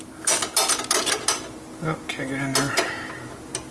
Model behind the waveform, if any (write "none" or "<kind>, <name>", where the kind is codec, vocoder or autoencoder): none